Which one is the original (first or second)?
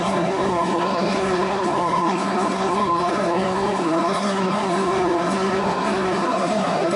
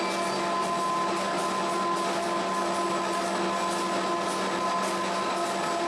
second